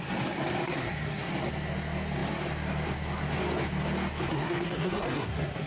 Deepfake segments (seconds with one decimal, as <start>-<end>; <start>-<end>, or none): 0.6-1.3; 4.3-5.7